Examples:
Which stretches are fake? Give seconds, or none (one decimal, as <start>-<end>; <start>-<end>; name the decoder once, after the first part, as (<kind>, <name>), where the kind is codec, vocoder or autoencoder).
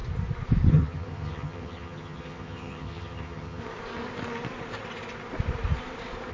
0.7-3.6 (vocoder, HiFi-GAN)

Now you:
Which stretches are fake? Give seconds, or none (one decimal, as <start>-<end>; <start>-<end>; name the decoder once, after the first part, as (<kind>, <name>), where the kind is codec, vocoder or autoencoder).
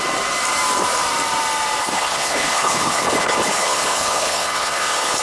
1.8-5.2 (codec, HILCodec)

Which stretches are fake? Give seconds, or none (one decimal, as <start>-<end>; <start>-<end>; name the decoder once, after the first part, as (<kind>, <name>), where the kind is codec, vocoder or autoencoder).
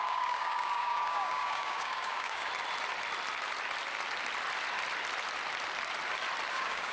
0.0-2.5 (codec, DAC); 6.5-6.9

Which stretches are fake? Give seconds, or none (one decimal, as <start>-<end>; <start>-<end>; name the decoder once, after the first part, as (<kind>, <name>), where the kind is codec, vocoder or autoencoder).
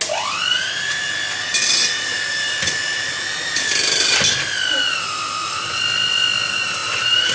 0.5-1.1 (vocoder, BigVGAN v2); 1.5-3.3; 6.8-7.3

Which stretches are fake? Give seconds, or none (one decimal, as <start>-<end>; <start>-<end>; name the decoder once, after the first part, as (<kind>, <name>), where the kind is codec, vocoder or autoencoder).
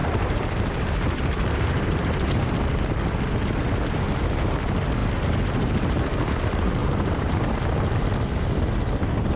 0.0-2.5 (vocoder, BigVGAN v2); 5.0-6.3; 6.8-7.5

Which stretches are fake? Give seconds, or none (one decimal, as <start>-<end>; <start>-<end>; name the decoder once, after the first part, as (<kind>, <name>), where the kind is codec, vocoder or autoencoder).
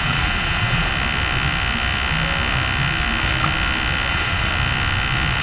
0.0-0.9 (vocoder, Vocos); 4.1-4.5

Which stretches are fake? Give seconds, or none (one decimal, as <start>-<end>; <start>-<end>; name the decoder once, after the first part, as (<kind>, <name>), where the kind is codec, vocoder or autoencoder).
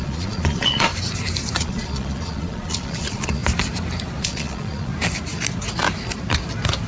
0.0-0.9 (vocoder, Vocos); 1.6-3.4; 4.2-4.9